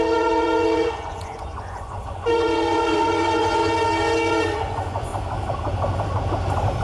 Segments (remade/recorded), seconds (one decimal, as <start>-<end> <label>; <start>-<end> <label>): 0.0-3.6 remade; 3.6-4.3 recorded; 4.3-5.1 remade; 5.1-6.8 recorded